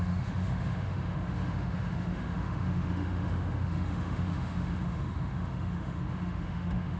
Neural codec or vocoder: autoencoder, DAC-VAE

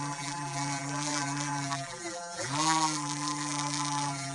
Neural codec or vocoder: vocoder, BigVGAN v2